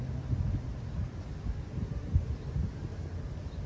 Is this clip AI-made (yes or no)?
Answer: no